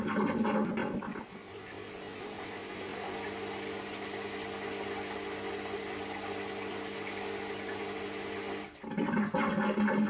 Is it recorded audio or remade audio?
recorded